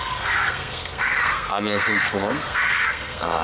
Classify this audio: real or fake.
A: fake